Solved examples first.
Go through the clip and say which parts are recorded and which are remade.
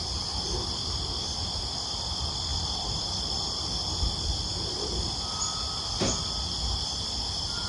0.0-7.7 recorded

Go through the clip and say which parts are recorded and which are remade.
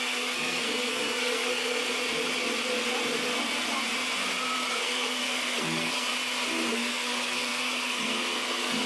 0.0-1.8 remade; 1.8-4.7 recorded; 4.7-6.1 remade; 6.1-6.7 recorded; 6.7-8.9 remade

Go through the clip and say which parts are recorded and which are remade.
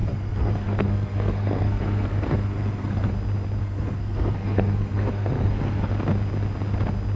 0.0-3.1 remade; 3.1-3.6 recorded; 3.6-5.9 remade; 5.9-7.2 recorded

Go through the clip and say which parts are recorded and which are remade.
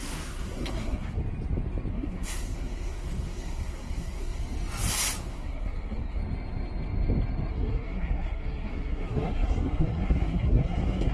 0.0-1.2 remade; 1.2-1.9 recorded; 1.9-4.4 remade; 4.4-5.2 recorded; 5.2-6.2 remade; 6.2-7.5 recorded; 7.5-11.1 remade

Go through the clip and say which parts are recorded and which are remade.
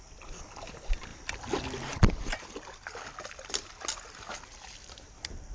0.0-5.5 recorded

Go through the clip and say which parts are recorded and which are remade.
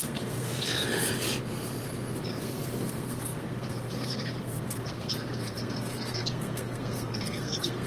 0.0-0.8 remade; 0.8-2.3 recorded; 2.3-7.9 remade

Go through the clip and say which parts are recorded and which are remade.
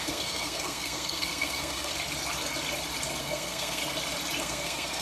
0.0-1.9 remade; 1.9-3.2 recorded; 3.2-3.8 remade; 3.8-4.4 recorded; 4.4-5.0 remade